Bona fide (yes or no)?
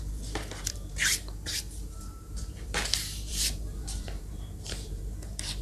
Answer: no